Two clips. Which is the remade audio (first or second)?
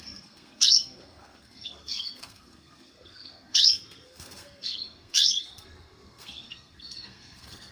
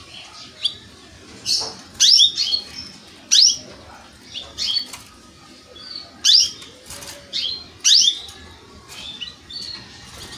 first